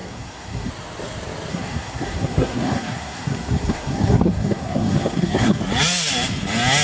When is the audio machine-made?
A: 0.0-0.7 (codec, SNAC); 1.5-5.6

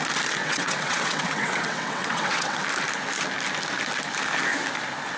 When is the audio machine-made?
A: 0.4-2.6 (vocoder, WaveNeXt)

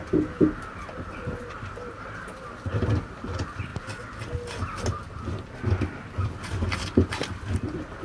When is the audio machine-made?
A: none

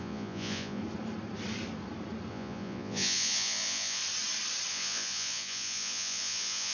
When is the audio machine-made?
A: 0.0-0.8 (vocoder, Vocos); 2.3-4.0; 4.7-6.7

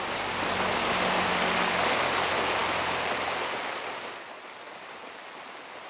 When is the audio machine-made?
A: none

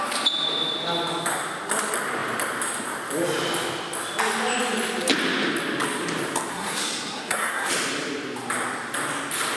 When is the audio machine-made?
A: 6.5-7.7 (codec, SNAC)